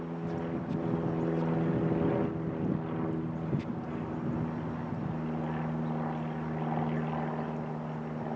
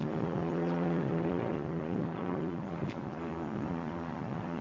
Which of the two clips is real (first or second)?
first